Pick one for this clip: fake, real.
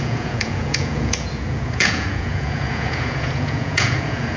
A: fake